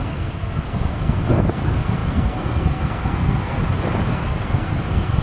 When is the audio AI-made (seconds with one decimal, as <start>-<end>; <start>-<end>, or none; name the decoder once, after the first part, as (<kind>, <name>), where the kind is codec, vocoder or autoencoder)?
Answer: 0.0-3.6 (codec, SNAC); 4.1-5.2